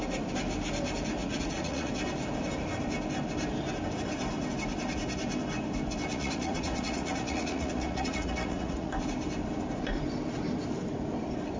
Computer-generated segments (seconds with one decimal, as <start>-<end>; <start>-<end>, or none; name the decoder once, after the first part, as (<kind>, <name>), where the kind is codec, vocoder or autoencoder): 1.2-1.9 (vocoder, Vocos); 6.1-8.9